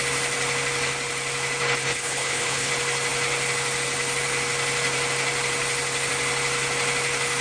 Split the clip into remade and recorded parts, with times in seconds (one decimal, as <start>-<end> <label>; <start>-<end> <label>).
0.0-1.8 recorded; 1.8-2.7 remade; 2.7-7.4 recorded